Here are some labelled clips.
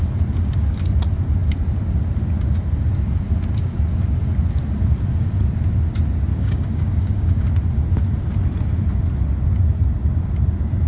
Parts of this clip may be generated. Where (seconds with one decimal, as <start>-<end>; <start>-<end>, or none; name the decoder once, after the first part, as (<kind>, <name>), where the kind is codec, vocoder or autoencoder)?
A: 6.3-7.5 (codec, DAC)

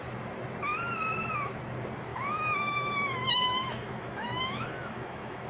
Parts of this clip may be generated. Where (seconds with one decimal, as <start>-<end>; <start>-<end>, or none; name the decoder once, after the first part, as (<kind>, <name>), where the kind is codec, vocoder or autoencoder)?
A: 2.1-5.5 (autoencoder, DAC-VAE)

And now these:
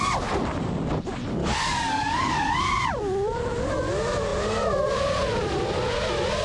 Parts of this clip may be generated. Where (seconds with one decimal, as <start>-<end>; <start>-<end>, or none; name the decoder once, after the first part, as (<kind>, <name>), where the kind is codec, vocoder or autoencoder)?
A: 1.4-2.6 (codec, DAC)

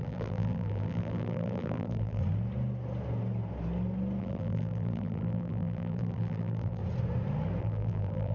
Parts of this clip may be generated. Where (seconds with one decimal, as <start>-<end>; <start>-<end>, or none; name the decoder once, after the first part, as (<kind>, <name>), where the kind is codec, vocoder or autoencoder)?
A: 0.0-2.2 (vocoder, BigVGAN v2); 4.2-6.8; 7.6-8.3

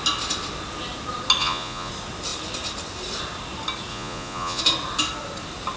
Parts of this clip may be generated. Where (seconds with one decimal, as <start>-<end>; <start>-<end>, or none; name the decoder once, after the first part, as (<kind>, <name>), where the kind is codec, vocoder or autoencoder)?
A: 1.4-1.9 (vocoder, Vocos); 3.9-4.6